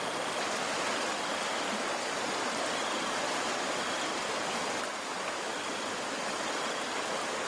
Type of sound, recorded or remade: recorded